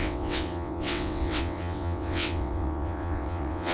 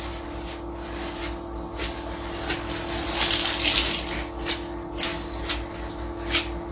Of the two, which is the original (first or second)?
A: second